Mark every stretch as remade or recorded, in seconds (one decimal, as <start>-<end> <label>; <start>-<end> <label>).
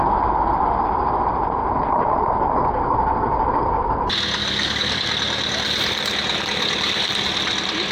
0.0-4.4 recorded; 4.4-5.0 remade; 5.0-7.9 recorded